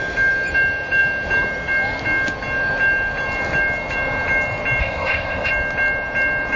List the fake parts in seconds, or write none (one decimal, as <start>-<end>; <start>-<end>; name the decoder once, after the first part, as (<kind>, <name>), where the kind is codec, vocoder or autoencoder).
4.8-5.5 (codec, ZipCodec)